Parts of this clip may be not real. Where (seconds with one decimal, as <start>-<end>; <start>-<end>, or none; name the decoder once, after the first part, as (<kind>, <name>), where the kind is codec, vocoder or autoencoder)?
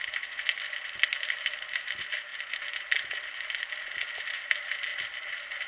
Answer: none